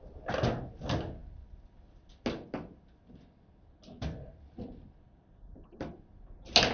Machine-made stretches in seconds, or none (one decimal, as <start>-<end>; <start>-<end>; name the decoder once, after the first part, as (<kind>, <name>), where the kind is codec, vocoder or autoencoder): none